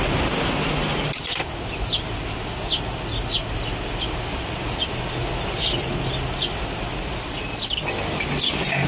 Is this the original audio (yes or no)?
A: yes